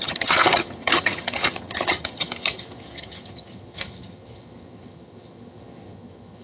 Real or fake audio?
fake